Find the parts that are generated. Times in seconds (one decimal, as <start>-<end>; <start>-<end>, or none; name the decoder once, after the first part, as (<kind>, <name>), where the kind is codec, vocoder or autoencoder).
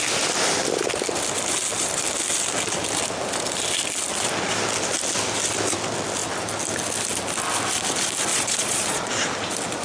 8.3-9.1 (vocoder, Vocos)